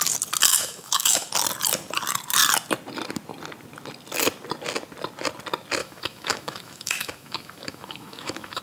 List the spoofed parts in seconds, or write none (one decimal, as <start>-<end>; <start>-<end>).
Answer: 0.5-1.3; 5.8-8.6